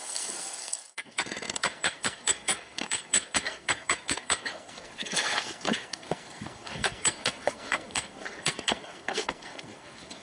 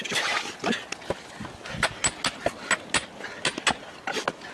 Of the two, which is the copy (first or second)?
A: first